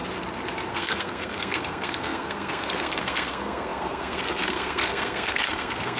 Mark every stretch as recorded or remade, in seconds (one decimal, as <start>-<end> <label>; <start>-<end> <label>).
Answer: 0.0-0.7 recorded; 0.7-6.0 remade